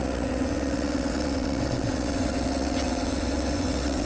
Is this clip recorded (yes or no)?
no